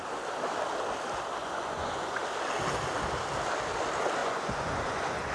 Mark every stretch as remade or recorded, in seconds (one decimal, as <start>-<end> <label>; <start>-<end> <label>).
0.0-1.4 recorded; 1.4-2.2 remade; 2.2-4.2 recorded; 4.2-5.3 remade